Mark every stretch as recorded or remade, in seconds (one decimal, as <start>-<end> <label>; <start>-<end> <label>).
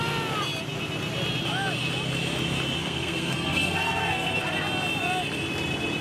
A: 0.0-2.8 recorded; 2.8-4.4 remade; 4.4-6.0 recorded